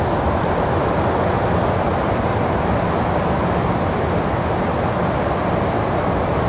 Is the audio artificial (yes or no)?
no